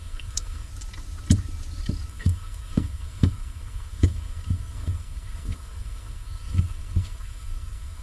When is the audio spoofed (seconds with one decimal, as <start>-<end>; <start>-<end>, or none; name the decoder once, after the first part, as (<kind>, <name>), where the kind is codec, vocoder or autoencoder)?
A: 0.0-0.7 (codec, SNAC); 2.1-8.0